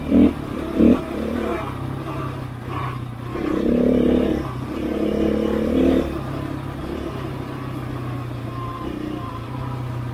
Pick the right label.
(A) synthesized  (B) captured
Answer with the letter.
B